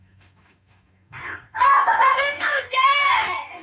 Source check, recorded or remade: remade